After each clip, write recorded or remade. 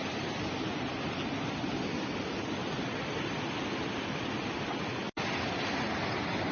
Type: recorded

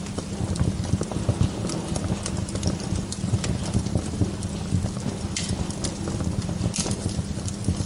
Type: remade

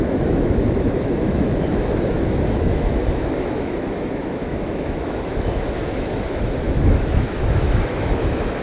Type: remade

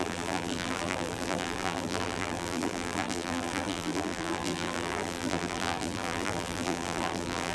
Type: remade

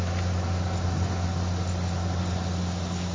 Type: recorded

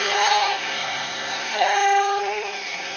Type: remade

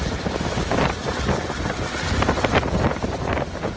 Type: recorded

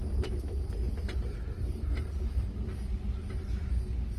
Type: recorded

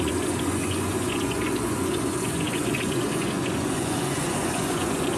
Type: remade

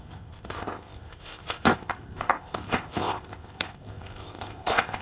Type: remade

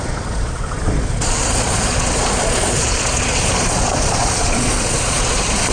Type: remade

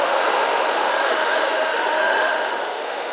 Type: remade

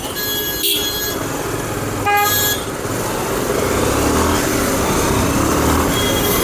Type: recorded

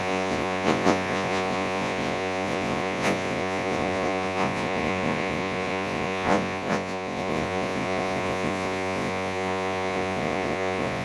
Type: remade